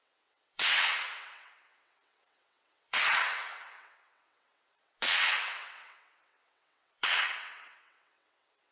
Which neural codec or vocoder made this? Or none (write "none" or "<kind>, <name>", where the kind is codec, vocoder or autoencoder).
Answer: vocoder, WaveNeXt